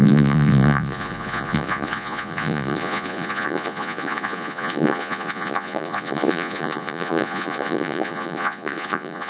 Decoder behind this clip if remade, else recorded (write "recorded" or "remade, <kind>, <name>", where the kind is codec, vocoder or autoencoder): remade, vocoder, Vocos